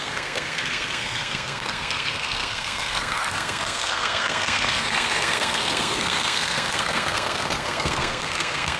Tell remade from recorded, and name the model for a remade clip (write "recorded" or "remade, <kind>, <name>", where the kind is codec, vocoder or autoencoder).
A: remade, codec, SNAC